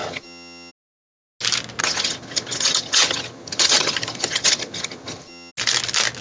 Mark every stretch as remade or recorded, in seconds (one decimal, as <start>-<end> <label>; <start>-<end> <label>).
0.0-0.7 remade; 0.7-1.8 recorded; 1.8-5.5 remade; 5.5-6.2 recorded

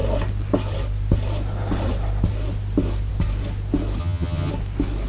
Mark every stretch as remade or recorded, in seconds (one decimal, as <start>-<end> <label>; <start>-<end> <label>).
0.0-4.0 recorded; 4.0-4.5 remade; 4.5-5.1 recorded